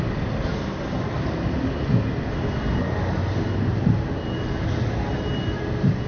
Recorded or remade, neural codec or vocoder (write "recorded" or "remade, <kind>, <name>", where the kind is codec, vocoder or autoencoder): recorded